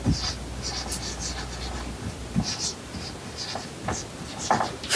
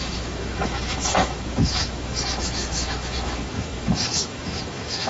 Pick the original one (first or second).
first